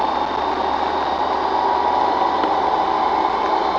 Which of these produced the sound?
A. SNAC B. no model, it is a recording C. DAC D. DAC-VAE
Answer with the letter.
B